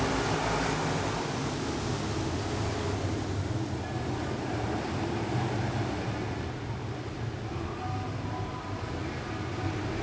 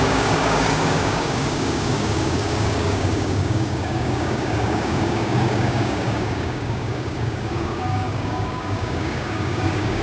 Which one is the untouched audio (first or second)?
first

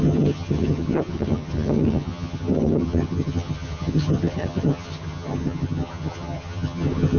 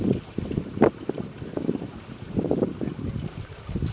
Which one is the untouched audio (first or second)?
second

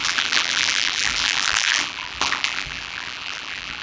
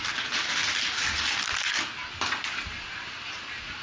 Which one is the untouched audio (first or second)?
second